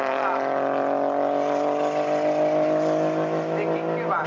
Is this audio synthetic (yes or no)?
no